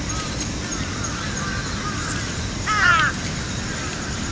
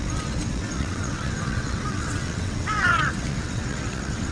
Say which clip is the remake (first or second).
second